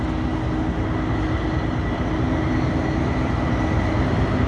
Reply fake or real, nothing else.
real